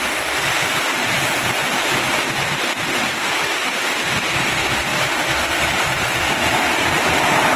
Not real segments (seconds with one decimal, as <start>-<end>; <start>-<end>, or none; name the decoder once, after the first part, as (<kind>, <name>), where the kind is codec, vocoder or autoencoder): 0.0-1.6 (vocoder, BigVGAN v2); 2.3-4.9; 6.3-7.6